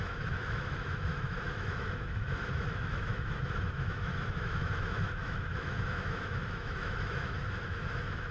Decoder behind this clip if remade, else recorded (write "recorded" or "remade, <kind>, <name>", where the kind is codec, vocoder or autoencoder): remade, autoencoder, DAC-VAE